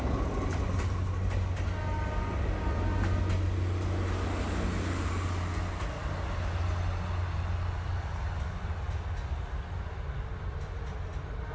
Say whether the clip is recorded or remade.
recorded